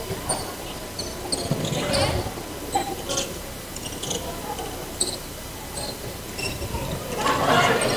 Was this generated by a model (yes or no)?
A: no